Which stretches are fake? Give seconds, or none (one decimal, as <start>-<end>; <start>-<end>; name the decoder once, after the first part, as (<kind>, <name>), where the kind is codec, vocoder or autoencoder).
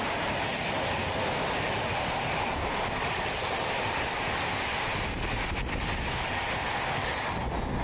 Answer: none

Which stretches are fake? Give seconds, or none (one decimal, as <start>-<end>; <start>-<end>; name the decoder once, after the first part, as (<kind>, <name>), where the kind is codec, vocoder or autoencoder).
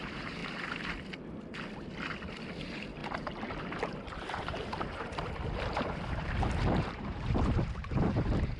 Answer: 0.0-0.4 (vocoder, BigVGAN v2); 2.6-8.6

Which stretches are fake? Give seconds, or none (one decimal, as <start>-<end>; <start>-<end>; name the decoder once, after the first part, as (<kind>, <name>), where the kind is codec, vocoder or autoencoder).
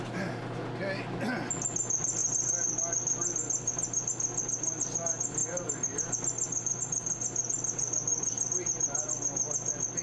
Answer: 5.4-6.8 (vocoder, BigVGAN v2); 8.1-9.1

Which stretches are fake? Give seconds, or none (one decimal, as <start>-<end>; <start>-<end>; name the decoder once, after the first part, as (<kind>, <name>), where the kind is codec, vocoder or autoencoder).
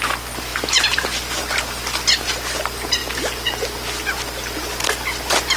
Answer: 0.5-1.8 (vocoder, BigVGAN v2)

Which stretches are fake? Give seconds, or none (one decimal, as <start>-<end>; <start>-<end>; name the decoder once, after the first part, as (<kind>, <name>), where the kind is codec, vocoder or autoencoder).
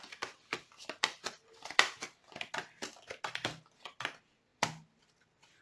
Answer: 0.0-2.8 (vocoder, BigVGAN v2); 3.3-4.5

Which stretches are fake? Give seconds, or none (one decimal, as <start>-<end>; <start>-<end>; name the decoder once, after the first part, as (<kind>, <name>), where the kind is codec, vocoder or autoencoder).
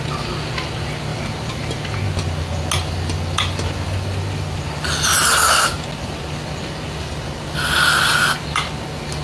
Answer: none